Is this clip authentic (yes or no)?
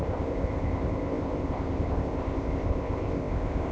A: no